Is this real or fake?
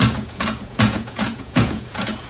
fake